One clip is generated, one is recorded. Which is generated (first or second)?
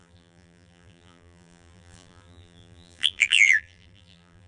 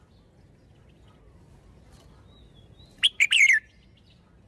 first